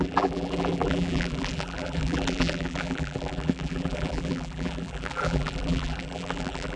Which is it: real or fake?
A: fake